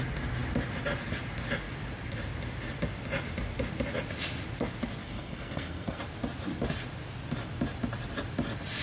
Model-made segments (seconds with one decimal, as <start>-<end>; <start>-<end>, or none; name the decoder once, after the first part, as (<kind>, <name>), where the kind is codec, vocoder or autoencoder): 5.0-6.0 (codec, SNAC)